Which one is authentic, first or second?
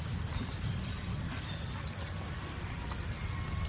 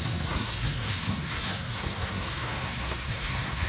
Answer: first